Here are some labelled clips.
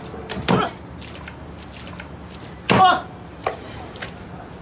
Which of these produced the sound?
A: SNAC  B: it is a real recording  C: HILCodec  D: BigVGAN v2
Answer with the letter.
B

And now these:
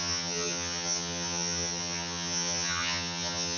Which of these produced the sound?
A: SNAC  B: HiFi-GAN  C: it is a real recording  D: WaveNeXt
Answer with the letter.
B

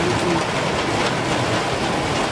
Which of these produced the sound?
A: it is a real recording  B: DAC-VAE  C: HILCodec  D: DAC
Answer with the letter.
A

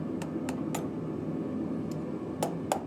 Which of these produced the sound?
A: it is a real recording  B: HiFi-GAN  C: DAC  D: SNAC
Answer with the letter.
A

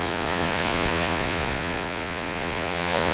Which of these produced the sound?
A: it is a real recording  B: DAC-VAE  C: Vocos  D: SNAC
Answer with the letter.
C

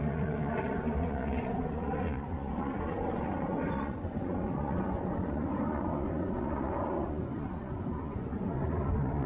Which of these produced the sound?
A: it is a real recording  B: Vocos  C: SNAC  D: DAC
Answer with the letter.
B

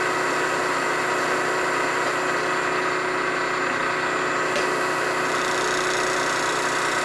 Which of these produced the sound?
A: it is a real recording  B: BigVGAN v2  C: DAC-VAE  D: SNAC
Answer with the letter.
A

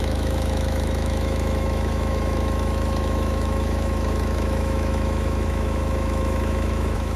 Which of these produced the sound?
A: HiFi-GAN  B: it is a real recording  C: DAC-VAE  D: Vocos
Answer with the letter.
C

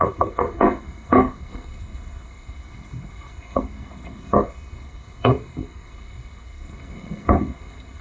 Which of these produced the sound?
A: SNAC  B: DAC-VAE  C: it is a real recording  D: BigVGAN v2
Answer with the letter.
A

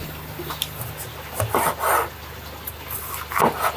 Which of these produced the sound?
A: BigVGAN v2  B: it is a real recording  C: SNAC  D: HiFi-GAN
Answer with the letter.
B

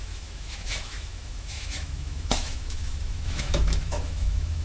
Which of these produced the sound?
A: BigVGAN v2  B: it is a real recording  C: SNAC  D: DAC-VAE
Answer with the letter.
D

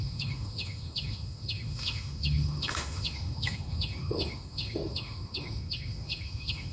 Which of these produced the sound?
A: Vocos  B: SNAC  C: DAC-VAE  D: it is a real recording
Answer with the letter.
C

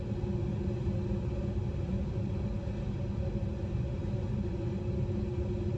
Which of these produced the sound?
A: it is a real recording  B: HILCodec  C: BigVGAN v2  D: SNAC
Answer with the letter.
A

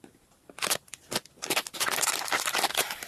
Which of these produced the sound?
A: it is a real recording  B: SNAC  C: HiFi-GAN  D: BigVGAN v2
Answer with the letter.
D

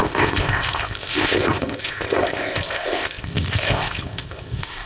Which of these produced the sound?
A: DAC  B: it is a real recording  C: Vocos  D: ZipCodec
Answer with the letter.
D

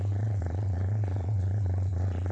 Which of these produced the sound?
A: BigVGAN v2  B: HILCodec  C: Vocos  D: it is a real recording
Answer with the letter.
C